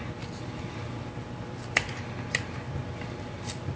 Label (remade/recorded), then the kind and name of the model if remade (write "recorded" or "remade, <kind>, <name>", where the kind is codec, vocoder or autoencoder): recorded